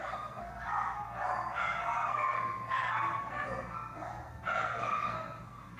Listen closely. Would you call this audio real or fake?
fake